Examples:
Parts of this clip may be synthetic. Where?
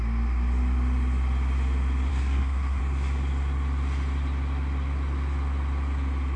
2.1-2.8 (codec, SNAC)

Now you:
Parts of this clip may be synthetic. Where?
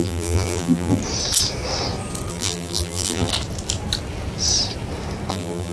0.0-1.0 (vocoder, BigVGAN v2); 2.3-3.3; 5.3-5.7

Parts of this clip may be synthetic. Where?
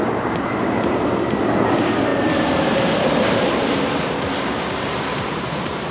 0.0-1.0 (vocoder, BigVGAN v2); 2.1-5.9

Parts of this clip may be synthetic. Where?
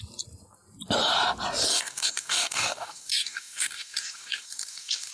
1.7-5.1 (codec, DAC)